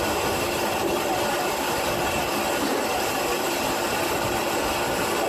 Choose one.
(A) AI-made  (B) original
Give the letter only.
B